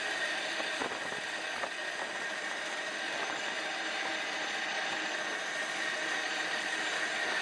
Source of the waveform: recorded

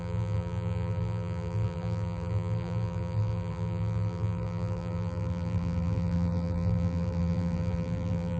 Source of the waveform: remade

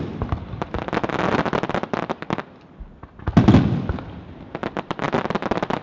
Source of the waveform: recorded